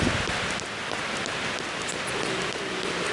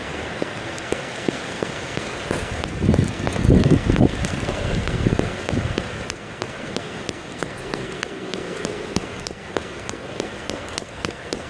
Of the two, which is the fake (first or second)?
second